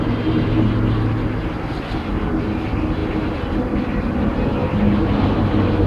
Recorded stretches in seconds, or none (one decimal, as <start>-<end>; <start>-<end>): 0.0-5.9